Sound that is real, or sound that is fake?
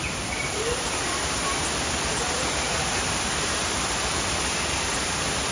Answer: real